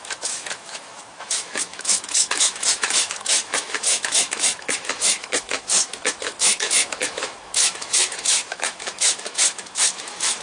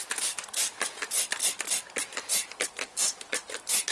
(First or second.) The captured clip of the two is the second